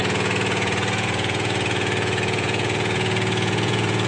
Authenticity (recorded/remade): remade